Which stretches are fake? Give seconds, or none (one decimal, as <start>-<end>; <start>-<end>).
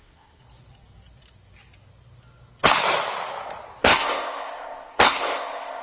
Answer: 0.0-0.4; 3.8-5.8